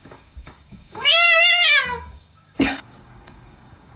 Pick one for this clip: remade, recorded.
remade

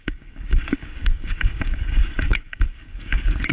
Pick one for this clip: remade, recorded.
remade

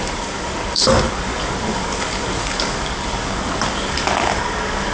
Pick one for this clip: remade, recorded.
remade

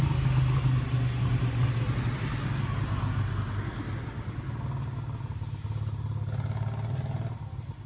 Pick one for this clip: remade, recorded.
recorded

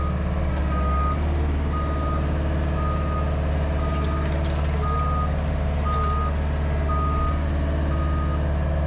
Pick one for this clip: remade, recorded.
recorded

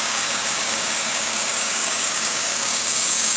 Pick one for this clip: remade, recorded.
remade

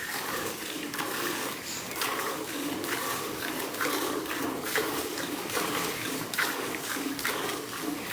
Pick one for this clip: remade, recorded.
remade